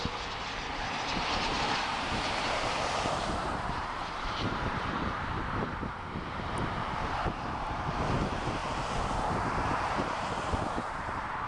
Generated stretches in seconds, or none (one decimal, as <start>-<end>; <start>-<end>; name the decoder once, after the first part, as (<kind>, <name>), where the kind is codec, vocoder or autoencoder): 0.7-8.6 (vocoder, BigVGAN v2); 9.3-11.5